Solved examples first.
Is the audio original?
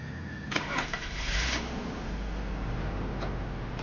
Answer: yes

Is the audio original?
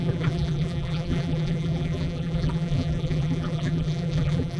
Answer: no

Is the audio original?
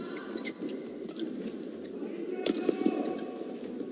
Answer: yes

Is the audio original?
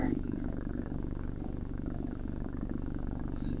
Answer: no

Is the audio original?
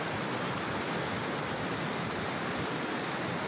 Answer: yes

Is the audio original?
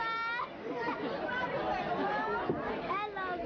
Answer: yes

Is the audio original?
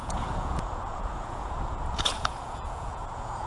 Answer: no